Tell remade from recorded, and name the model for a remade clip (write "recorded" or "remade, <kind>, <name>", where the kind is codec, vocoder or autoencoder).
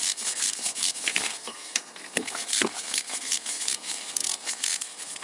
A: remade, codec, SNAC